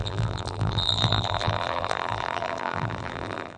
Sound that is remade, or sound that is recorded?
remade